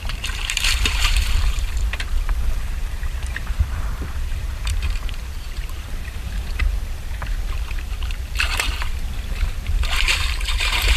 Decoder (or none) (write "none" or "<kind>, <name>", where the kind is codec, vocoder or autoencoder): vocoder, BigVGAN v2